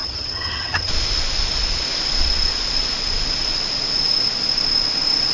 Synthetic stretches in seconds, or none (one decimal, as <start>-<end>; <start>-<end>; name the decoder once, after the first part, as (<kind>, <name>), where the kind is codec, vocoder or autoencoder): 0.0-0.9 (vocoder, HiFi-GAN)